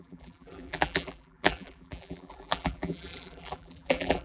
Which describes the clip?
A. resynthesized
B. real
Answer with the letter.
A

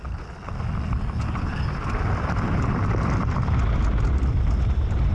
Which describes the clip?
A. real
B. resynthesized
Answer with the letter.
A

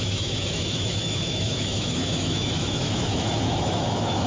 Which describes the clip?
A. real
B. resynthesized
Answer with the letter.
B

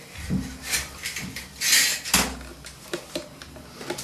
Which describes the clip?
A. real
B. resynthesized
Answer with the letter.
A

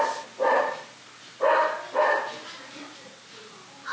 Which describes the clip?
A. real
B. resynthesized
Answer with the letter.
A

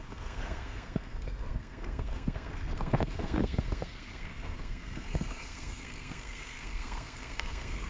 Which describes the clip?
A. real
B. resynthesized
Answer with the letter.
B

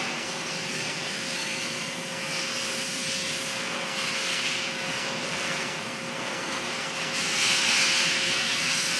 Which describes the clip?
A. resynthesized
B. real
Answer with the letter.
A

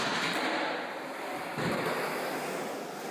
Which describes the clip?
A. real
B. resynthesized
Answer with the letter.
A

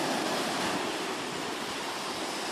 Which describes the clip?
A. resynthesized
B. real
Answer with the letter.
B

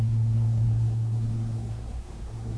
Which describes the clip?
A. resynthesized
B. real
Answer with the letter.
A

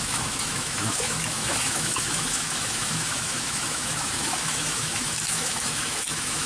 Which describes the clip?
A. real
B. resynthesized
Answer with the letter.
B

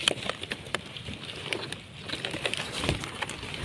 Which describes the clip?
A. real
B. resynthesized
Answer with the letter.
A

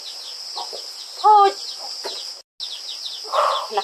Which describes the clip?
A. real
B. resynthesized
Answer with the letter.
A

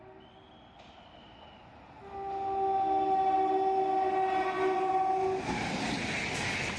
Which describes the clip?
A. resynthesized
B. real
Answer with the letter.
B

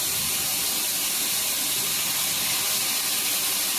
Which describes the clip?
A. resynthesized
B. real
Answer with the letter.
B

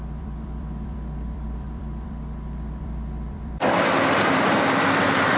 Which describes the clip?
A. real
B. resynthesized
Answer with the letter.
B